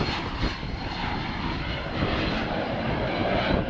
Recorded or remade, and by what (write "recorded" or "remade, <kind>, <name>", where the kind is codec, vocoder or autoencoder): recorded